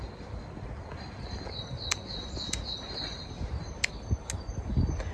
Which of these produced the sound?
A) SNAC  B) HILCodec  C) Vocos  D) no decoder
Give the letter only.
D